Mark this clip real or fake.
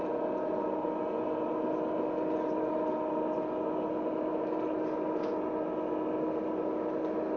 real